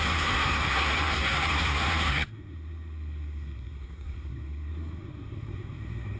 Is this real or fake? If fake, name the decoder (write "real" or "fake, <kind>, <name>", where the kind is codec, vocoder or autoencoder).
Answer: fake, codec, SNAC